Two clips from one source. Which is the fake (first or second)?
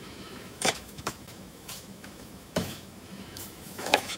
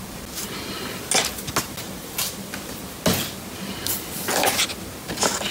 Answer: first